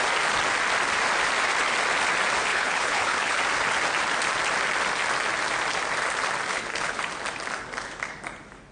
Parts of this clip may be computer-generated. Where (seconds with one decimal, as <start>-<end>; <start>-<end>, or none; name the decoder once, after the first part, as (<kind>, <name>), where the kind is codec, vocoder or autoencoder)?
2.5-3.4 (codec, HILCodec); 6.5-7.0